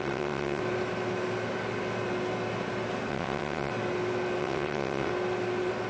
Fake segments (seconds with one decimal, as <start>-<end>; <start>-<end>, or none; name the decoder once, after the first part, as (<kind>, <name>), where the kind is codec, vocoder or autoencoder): 0.0-0.6 (vocoder, WaveNeXt); 3.1-3.7; 4.4-5.1